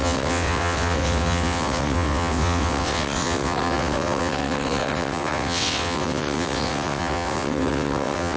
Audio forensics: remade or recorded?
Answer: remade